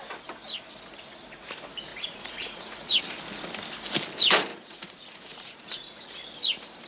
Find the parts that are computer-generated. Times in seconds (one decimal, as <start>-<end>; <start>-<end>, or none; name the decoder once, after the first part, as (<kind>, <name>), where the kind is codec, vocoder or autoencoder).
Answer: 1.9-3.0 (vocoder, Vocos); 4.5-6.1

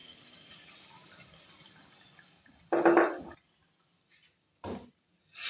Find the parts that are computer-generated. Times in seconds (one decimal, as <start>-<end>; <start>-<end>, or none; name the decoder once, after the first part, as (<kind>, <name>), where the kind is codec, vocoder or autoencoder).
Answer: 0.0-0.5 (vocoder, BigVGAN v2); 3.6-5.5

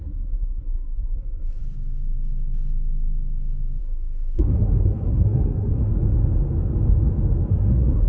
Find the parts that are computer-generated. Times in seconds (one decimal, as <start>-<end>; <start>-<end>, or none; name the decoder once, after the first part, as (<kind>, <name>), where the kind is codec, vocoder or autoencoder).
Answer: 0.0-1.6 (codec, SNAC); 3.8-5.9; 7.5-8.1

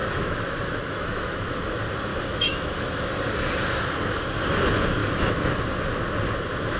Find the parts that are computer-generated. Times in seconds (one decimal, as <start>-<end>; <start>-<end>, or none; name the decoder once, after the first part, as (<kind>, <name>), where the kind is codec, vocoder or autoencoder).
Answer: 0.0-1.5 (autoencoder, DAC-VAE); 2.1-3.1; 5.0-5.6

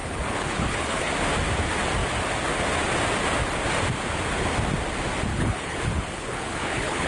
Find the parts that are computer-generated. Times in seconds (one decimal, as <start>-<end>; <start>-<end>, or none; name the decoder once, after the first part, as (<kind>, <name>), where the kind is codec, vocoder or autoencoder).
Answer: 0.0-1.1 (codec, HILCodec); 5.3-7.1

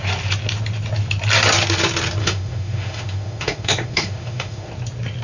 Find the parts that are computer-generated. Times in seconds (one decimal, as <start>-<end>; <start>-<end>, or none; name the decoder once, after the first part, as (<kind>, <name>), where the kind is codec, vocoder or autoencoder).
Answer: 2.2-4.7 (autoencoder, DAC-VAE)

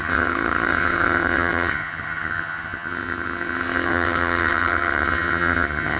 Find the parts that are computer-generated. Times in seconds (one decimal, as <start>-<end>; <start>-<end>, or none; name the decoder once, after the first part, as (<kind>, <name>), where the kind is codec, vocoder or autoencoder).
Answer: 0.0-6.0 (vocoder, HiFi-GAN)